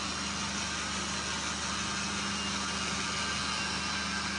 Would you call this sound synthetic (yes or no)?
no